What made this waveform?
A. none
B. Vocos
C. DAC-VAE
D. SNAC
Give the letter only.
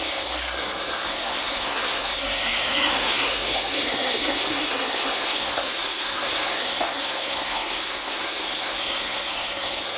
D